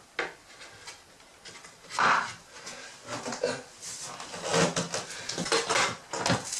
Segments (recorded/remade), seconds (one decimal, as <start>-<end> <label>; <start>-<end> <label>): 0.0-6.6 recorded